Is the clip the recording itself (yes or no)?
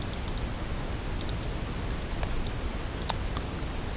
yes